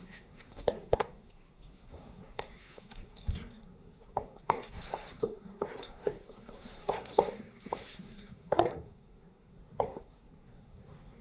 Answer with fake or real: fake